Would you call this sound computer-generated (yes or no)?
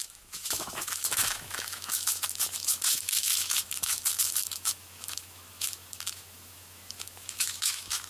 yes